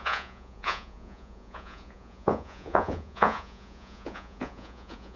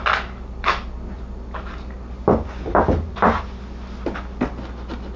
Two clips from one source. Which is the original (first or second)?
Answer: second